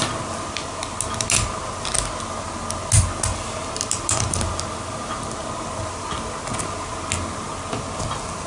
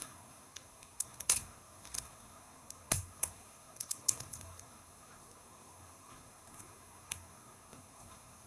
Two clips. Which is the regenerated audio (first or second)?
second